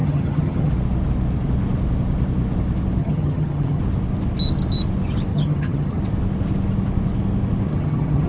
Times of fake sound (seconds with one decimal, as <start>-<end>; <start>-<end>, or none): 0.0-0.7; 3.0-3.8; 5.3-6.0; 7.7-8.3